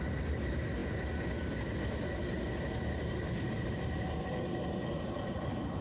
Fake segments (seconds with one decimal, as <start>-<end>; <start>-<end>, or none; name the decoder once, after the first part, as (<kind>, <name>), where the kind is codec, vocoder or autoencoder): 0.0-5.8 (vocoder, BigVGAN v2)